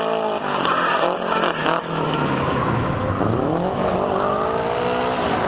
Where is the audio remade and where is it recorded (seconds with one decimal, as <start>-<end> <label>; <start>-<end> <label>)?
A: 0.0-1.6 recorded; 1.6-3.9 remade; 3.9-5.5 recorded